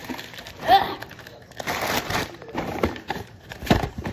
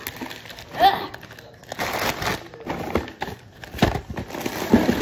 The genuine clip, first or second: second